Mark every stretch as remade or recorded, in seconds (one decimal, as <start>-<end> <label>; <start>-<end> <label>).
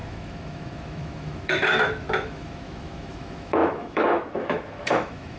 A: 0.0-5.4 remade